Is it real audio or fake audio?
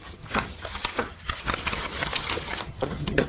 fake